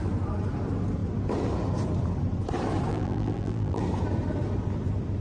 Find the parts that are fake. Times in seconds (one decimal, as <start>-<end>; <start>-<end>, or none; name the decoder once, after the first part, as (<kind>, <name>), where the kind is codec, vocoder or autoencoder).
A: 2.9-3.8 (vocoder, BigVGAN v2)